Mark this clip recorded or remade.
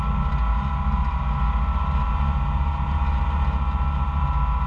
recorded